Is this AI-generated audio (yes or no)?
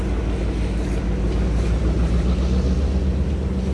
no